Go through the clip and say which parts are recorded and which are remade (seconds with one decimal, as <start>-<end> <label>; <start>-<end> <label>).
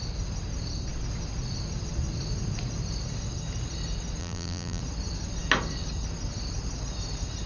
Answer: 0.0-4.2 recorded; 4.2-4.8 remade; 4.8-7.5 recorded